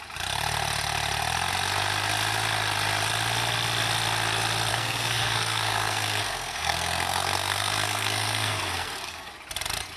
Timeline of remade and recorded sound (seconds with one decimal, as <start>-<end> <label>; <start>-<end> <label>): 0.0-4.7 recorded; 4.7-9.3 remade; 9.3-10.0 recorded